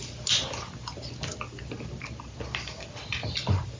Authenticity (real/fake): real